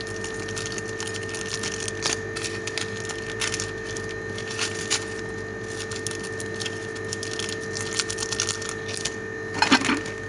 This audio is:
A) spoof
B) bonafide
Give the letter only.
B